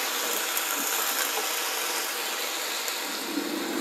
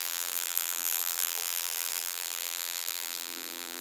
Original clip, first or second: first